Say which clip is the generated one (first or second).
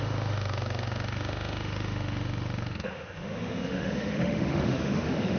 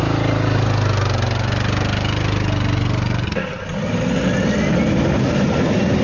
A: first